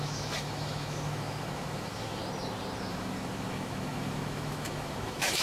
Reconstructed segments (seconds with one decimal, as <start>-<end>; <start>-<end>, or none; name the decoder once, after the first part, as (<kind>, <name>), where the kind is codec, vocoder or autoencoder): 0.0-2.2 (autoencoder, DAC-VAE); 2.9-5.4